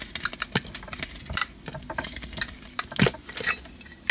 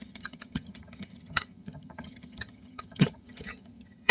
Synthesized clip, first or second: second